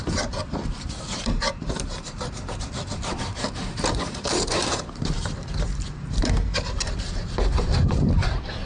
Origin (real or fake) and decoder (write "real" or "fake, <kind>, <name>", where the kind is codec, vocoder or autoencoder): fake, vocoder, BigVGAN v2